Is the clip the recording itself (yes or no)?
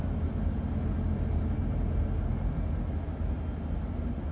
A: yes